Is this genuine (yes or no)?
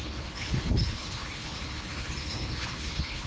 no